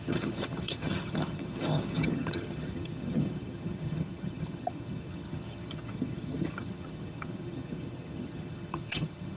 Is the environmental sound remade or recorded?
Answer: remade